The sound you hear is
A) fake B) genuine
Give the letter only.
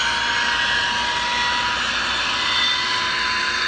B